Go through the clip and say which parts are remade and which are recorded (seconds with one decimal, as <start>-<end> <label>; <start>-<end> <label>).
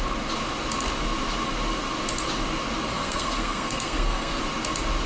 0.0-2.9 recorded; 2.9-4.4 remade; 4.4-5.1 recorded